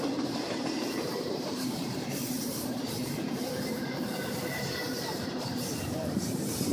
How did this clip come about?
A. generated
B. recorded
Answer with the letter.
A